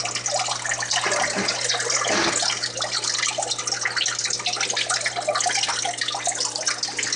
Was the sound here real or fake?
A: real